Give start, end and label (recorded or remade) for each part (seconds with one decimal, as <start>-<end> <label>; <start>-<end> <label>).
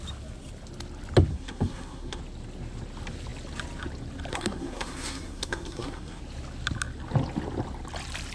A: 0.0-1.3 recorded; 1.3-2.2 remade; 2.2-4.3 recorded; 4.3-6.2 remade; 6.2-8.3 recorded